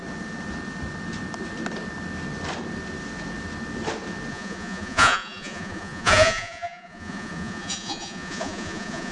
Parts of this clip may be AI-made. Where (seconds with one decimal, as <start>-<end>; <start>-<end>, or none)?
4.3-9.1